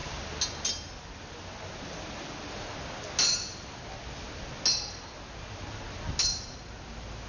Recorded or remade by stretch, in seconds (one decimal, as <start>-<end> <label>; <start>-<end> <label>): 0.0-7.3 recorded